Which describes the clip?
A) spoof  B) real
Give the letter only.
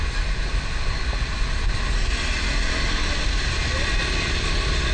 B